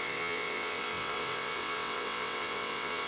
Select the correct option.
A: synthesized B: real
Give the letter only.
A